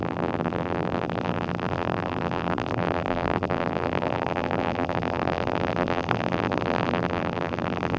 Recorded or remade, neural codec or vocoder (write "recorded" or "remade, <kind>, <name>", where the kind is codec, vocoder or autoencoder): remade, vocoder, BigVGAN v2